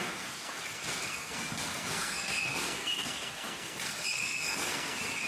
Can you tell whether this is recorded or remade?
remade